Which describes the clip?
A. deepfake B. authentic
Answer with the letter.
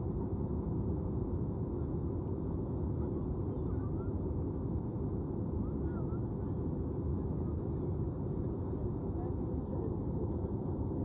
B